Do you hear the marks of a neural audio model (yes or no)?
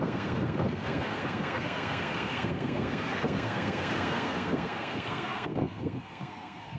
yes